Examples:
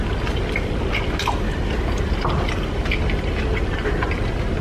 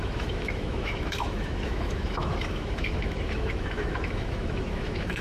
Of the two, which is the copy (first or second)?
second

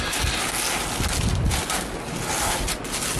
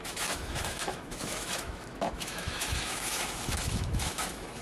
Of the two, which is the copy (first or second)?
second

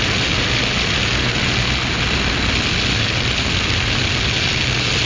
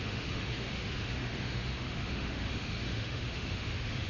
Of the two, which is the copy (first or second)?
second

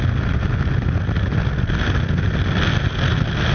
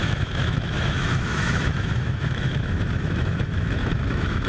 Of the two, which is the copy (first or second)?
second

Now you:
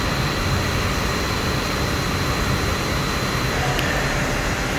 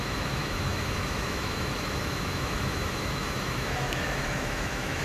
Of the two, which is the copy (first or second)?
second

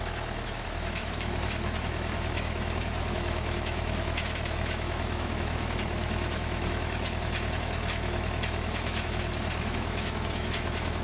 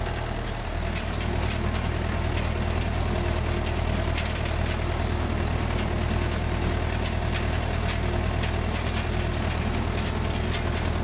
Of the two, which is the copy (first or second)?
first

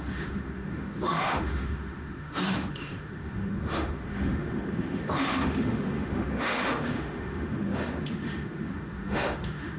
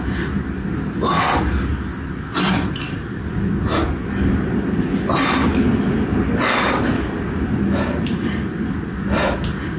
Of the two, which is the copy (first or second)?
first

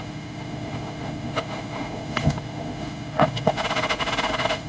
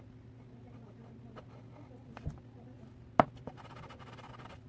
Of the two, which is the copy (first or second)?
first